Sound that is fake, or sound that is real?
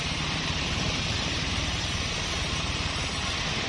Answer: fake